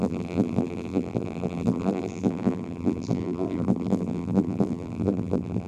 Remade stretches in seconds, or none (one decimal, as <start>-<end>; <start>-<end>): 0.0-5.7